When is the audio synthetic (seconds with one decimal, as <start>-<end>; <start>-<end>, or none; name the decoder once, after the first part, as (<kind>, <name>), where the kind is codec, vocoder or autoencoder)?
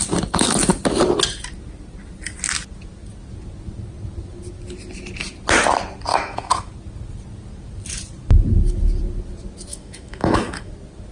6.1-6.7 (autoencoder, DAC-VAE); 9.7-10.7